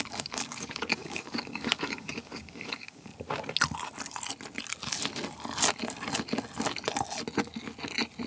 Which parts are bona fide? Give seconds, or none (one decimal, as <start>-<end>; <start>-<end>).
3.1-8.3